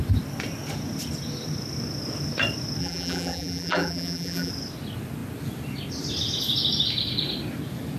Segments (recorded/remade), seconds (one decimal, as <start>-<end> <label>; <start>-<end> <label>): 0.0-2.8 recorded; 2.8-4.5 remade; 4.5-8.0 recorded